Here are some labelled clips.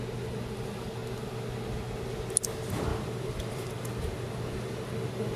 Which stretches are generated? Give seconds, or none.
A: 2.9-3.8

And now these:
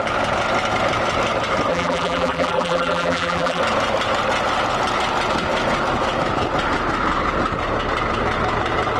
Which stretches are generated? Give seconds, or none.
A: 1.7-3.6

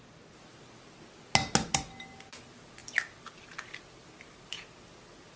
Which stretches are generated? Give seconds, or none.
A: none

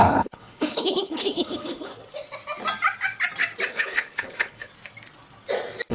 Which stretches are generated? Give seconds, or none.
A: 0.0-1.9; 3.7-4.7